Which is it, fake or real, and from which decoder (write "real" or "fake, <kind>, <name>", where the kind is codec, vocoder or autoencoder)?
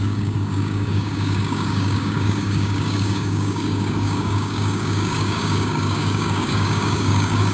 fake, codec, DAC